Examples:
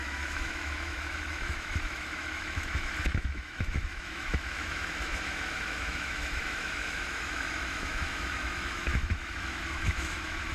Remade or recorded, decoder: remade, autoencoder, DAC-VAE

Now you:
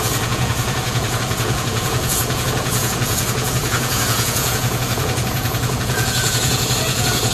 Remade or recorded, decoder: remade, vocoder, Vocos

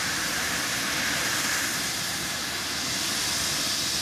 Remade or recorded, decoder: recorded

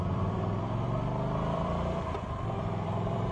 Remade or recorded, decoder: remade, vocoder, BigVGAN v2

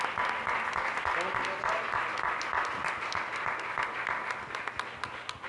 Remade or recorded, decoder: recorded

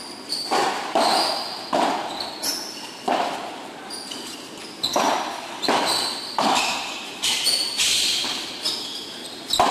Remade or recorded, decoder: recorded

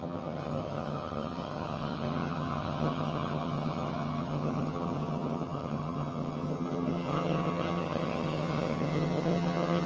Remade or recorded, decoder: remade, vocoder, HiFi-GAN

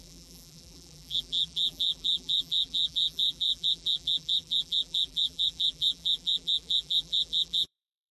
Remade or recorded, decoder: remade, vocoder, BigVGAN v2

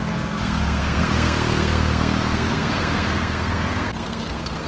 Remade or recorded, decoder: remade, codec, SNAC